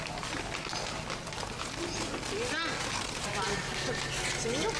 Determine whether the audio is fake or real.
real